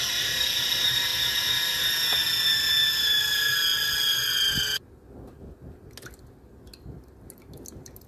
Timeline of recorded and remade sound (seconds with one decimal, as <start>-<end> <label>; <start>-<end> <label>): 0.0-8.1 recorded